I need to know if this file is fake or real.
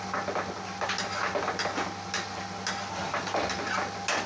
real